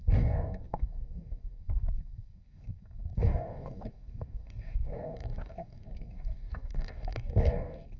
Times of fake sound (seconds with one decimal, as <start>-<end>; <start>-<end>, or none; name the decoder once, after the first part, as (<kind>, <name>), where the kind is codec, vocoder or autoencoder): 0.0-8.0 (codec, DAC)